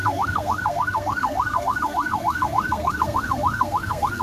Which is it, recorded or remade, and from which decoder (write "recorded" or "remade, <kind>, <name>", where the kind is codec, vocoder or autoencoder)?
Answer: remade, codec, SNAC